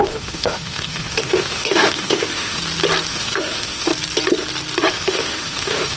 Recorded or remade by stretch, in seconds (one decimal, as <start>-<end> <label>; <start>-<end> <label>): 0.0-2.6 remade; 2.6-3.1 recorded; 3.1-3.9 remade; 3.9-4.9 recorded; 4.9-6.0 remade